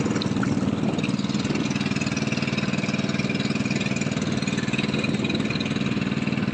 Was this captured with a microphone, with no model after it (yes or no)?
yes